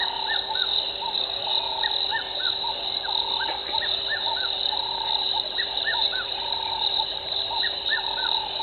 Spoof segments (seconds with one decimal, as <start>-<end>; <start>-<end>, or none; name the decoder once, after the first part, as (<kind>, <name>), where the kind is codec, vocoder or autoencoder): 0.7-1.5 (vocoder, BigVGAN v2); 2.1-2.9; 3.6-8.6